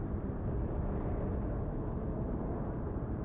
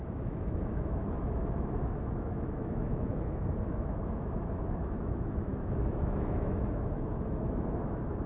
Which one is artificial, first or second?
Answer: second